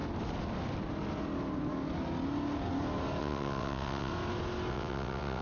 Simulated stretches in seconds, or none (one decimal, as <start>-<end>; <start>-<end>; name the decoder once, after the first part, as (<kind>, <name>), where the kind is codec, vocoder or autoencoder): 3.2-4.1 (vocoder, WaveNeXt); 4.7-5.4